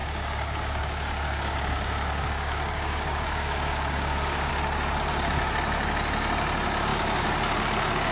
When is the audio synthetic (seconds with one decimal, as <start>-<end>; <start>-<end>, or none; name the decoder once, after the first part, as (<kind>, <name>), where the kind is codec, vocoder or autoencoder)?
0.0-4.5 (codec, DAC)